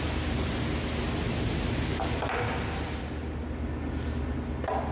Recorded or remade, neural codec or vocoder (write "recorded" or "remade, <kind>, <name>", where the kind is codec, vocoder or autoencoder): recorded